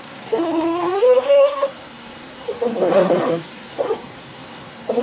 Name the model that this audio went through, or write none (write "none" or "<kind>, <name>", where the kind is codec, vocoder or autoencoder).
codec, SNAC